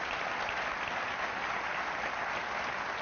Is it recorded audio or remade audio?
recorded